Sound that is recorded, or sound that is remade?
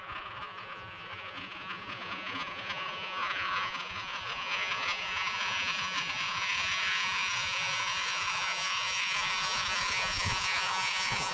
remade